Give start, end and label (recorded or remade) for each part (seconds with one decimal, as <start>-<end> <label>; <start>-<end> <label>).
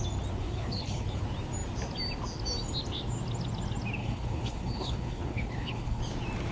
0.0-0.4 recorded; 0.4-1.2 remade; 1.2-4.0 recorded; 4.0-6.0 remade; 6.0-6.5 recorded